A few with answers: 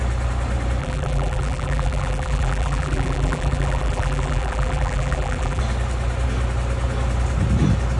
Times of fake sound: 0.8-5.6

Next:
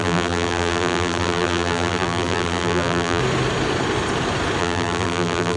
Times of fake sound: 0.0-3.2; 4.6-5.6

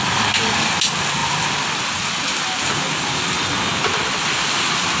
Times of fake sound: none

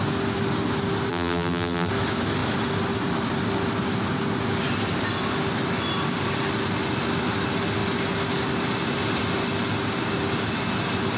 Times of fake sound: 1.1-1.9

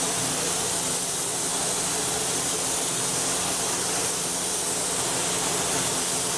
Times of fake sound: none

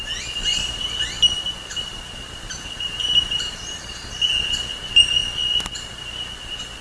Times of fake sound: 0.5-1.0; 1.7-4.1